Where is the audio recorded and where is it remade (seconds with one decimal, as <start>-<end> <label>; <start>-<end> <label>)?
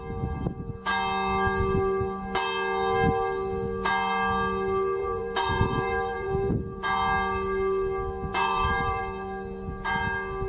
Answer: 0.0-5.0 recorded; 5.0-6.5 remade; 6.5-8.3 recorded; 8.3-9.0 remade; 9.0-10.5 recorded